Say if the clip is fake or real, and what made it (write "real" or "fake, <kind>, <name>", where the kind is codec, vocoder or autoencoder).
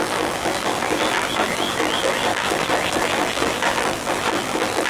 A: fake, vocoder, BigVGAN v2